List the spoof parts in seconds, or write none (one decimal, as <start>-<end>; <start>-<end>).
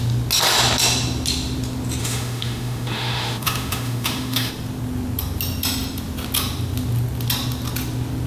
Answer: 2.0-4.5